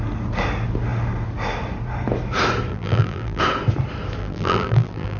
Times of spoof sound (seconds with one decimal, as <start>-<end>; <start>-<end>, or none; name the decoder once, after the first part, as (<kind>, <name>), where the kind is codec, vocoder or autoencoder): 2.7-3.4 (vocoder, BigVGAN v2); 4.2-5.2